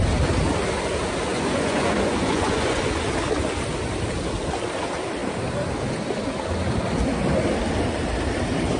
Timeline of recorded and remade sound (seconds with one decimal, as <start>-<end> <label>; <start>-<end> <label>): 0.0-1.3 recorded; 1.3-2.8 remade; 2.8-8.8 recorded